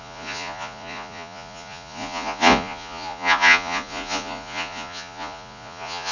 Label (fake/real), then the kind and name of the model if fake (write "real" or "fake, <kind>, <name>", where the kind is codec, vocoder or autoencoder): fake, vocoder, Vocos